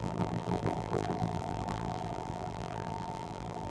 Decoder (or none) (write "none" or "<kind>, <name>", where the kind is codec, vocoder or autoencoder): vocoder, BigVGAN v2